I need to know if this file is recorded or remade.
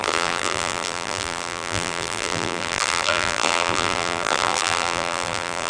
remade